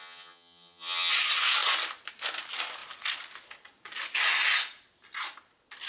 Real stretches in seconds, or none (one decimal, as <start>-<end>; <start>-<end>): 1.1-5.9